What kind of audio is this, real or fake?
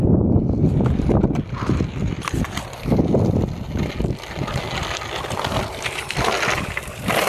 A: real